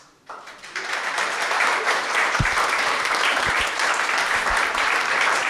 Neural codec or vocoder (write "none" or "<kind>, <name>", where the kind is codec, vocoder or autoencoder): vocoder, BigVGAN v2